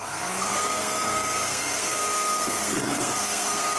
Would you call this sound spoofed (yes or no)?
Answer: yes